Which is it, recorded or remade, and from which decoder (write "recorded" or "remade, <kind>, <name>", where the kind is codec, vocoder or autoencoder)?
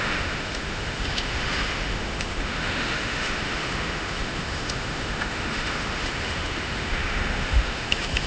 remade, autoencoder, DAC-VAE